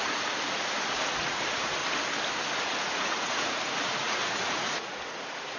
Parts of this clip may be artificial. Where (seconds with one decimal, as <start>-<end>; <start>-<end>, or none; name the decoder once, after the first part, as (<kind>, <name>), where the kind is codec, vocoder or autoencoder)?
0.0-1.8 (vocoder, Vocos); 2.6-5.6